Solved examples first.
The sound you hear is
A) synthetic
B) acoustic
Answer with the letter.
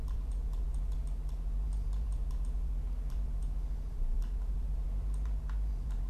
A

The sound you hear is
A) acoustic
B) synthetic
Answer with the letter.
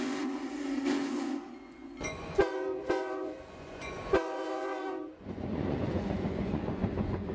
B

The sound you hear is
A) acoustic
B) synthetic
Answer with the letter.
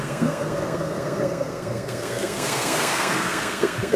B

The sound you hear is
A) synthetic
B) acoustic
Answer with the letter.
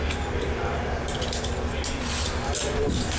B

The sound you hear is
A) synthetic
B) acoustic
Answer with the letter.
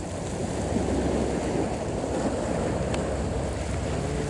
B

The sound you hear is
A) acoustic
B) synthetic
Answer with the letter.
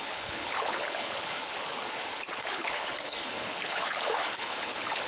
B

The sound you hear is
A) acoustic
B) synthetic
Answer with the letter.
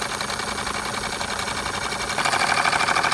A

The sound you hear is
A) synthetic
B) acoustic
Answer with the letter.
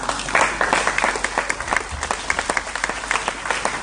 B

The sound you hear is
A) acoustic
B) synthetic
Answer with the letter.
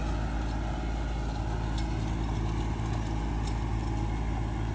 A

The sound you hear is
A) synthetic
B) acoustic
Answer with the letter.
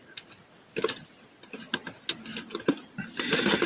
B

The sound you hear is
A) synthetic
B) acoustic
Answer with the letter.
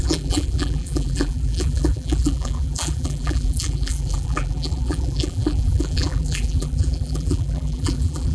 A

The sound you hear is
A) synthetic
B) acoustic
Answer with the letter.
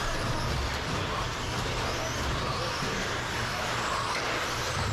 B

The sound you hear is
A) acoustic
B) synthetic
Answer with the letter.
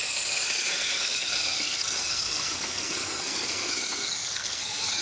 B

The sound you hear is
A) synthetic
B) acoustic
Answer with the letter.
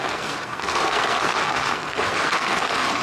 A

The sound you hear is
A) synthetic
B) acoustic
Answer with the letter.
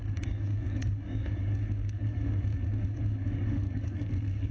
A